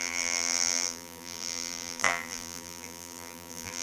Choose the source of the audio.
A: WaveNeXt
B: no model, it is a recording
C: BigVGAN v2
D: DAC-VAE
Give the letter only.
C